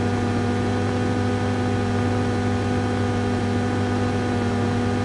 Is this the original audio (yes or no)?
yes